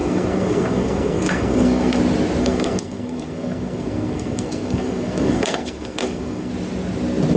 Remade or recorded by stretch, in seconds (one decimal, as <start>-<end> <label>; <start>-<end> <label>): 0.0-2.0 remade; 2.0-2.4 recorded; 2.4-6.5 remade; 6.5-7.4 recorded